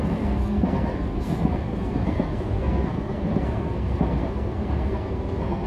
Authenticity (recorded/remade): remade